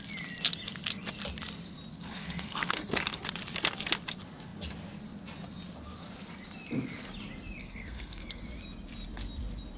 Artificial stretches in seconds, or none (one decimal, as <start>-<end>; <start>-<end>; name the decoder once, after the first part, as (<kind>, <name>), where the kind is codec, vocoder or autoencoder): 1.9-3.2 (codec, SNAC); 7.6-8.4